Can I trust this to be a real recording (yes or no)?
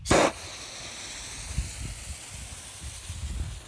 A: yes